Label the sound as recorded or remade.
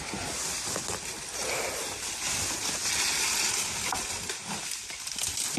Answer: recorded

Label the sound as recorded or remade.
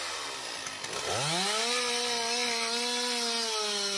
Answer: recorded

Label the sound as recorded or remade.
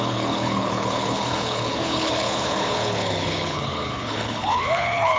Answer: remade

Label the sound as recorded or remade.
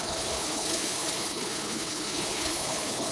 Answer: remade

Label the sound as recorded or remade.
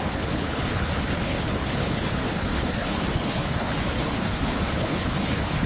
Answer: remade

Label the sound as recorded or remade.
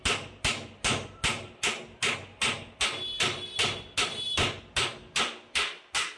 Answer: recorded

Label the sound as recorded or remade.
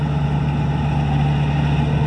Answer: recorded